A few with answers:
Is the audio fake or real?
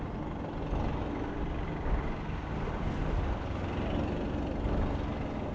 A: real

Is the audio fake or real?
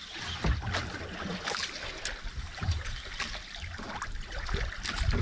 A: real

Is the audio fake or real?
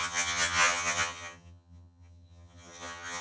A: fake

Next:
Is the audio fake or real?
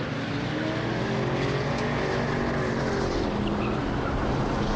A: real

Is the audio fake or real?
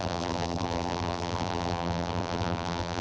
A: fake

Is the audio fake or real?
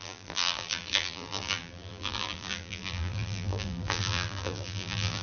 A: fake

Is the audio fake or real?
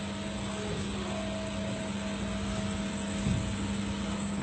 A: real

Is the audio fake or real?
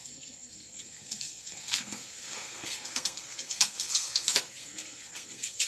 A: fake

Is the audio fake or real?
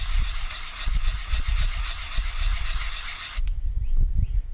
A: real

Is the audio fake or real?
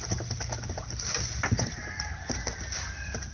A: real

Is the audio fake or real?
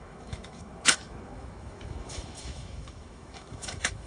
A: fake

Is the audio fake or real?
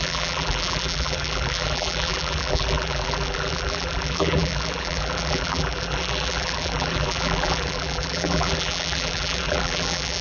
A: fake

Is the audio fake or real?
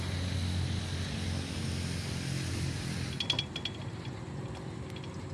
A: real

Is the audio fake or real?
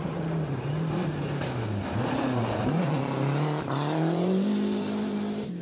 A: fake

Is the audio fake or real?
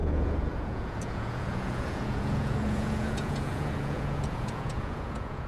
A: fake